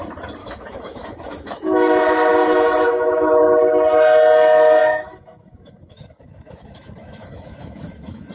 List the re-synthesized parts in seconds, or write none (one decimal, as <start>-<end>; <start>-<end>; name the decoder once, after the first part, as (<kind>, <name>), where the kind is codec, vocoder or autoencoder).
0.4-2.0 (autoencoder, DAC-VAE); 2.4-3.4; 4.8-8.3